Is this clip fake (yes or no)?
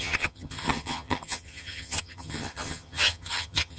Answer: yes